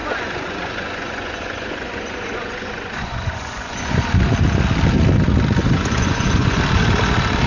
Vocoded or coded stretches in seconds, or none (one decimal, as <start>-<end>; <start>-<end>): 0.0-4.0; 5.6-6.6